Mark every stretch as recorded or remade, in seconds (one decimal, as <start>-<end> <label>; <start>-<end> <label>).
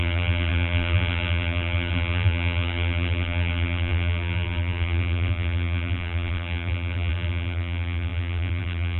0.0-9.0 remade